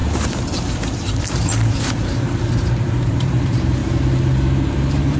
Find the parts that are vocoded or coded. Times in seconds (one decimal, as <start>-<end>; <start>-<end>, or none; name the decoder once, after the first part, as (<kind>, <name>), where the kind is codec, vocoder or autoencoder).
0.0-3.8 (vocoder, BigVGAN v2); 4.7-5.2